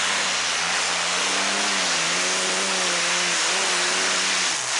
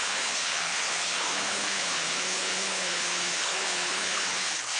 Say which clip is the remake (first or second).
second